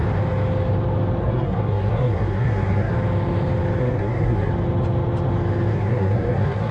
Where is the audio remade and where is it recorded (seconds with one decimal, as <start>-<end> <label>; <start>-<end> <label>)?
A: 0.0-1.2 recorded; 1.2-2.9 remade; 2.9-3.8 recorded; 3.8-4.5 remade; 4.5-5.7 recorded; 5.7-6.7 remade